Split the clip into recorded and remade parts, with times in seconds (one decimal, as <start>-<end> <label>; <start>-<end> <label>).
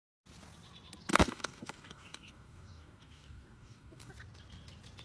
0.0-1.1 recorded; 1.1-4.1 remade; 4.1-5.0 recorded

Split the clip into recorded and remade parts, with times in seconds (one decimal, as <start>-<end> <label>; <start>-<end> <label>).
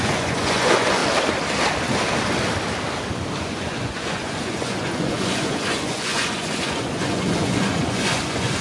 0.0-1.0 remade; 1.0-3.4 recorded; 3.4-8.6 remade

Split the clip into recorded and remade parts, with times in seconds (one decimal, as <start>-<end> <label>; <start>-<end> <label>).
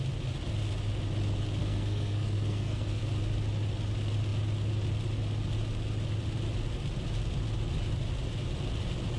0.0-1.6 recorded; 1.6-3.0 remade; 3.0-9.2 recorded